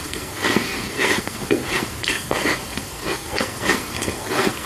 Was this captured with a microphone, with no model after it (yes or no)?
no